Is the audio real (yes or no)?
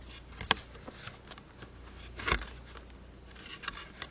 yes